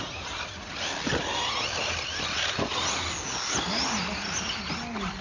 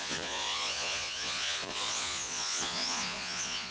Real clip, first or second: first